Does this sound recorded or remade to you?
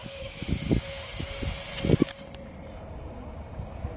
recorded